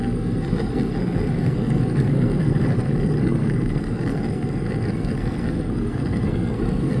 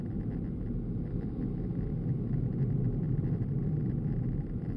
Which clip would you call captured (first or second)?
second